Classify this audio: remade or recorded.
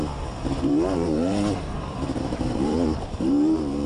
remade